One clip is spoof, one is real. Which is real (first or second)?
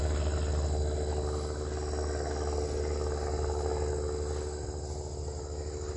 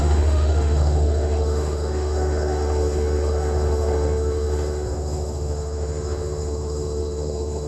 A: first